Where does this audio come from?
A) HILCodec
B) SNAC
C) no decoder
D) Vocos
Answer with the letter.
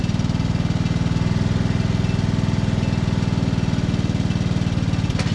C